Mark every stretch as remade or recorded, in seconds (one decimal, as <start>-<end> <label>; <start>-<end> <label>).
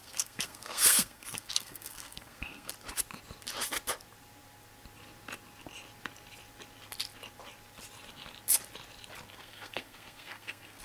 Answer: 0.0-2.7 remade; 2.7-9.3 recorded; 9.3-10.8 remade